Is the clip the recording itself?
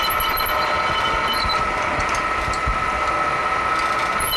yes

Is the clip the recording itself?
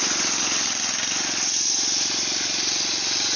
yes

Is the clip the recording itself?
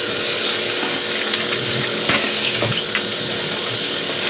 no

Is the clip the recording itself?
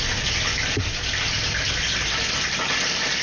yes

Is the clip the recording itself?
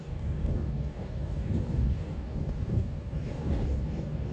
no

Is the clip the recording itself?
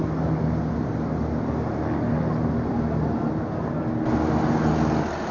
yes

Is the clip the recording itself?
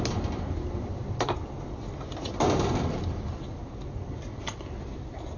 yes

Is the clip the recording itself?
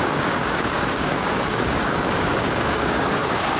no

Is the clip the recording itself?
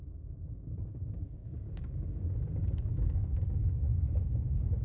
no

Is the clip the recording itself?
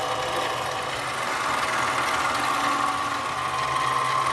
yes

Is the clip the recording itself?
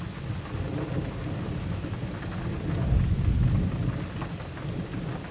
yes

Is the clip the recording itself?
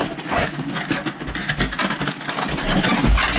yes